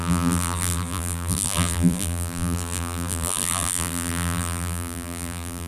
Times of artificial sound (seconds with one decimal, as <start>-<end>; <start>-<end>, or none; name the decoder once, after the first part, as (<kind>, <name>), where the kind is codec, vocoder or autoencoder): 0.0-5.7 (vocoder, BigVGAN v2)

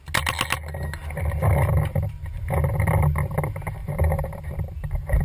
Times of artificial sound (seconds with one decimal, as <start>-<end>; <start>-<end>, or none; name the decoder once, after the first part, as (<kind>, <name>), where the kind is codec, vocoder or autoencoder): 3.8-4.3 (vocoder, BigVGAN v2)